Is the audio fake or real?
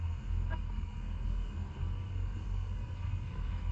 fake